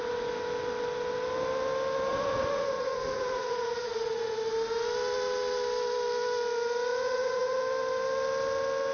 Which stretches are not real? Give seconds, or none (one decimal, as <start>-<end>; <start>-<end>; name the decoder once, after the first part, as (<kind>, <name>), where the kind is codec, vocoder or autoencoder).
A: 2.1-4.4 (vocoder, Vocos); 6.9-7.6